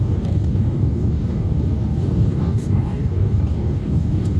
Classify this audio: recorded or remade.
remade